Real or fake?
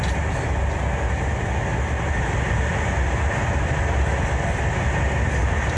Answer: real